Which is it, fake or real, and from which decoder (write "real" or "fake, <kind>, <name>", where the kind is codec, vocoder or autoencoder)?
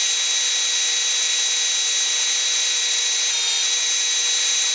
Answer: real